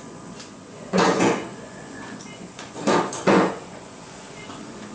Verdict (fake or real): fake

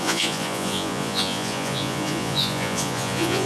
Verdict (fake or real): fake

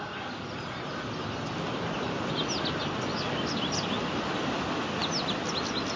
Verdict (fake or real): real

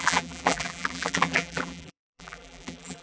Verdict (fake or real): fake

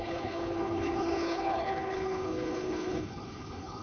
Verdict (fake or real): fake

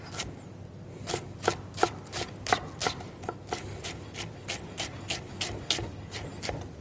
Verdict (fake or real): real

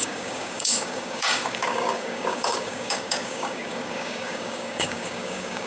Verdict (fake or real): fake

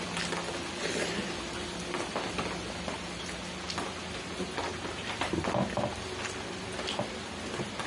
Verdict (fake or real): real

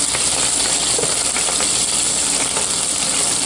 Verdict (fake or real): real